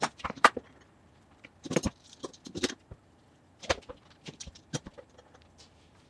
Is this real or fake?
fake